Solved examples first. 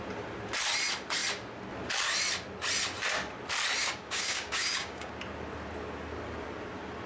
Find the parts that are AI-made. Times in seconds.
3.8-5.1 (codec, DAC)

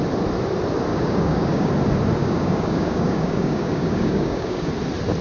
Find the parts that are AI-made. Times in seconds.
0.9-1.7 (codec, DAC); 2.2-4.7

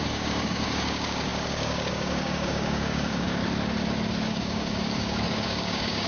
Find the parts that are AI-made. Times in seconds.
0.0-3.4 (codec, DAC); 4.2-6.1